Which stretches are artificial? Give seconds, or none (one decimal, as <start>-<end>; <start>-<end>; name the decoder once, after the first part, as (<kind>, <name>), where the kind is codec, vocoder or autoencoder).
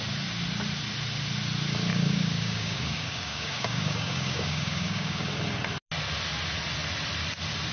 1.9-5.3 (codec, DAC)